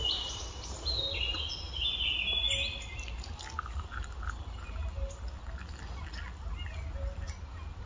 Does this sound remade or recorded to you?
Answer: recorded